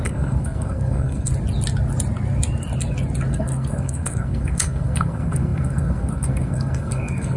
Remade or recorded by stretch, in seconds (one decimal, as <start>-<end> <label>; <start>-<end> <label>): 0.0-1.3 remade; 1.3-3.3 recorded; 3.3-7.4 remade